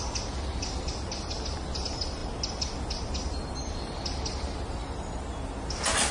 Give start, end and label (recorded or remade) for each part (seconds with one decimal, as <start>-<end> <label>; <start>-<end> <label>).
0.0-6.1 recorded